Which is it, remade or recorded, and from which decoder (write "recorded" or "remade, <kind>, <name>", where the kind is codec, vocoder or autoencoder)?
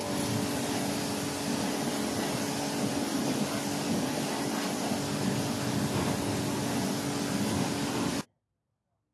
recorded